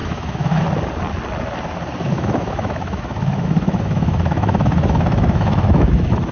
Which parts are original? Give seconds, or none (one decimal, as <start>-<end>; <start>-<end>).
0.6-2.1